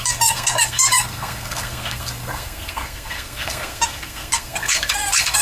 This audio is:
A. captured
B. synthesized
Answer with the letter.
B